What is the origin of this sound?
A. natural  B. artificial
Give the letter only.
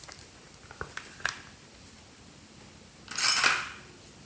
A